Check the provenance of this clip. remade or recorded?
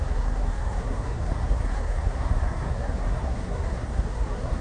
remade